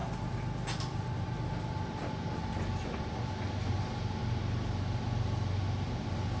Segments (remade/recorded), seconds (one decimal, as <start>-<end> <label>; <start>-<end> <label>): 0.0-6.4 recorded